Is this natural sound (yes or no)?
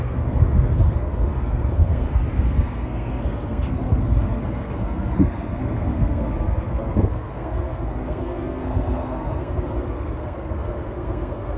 no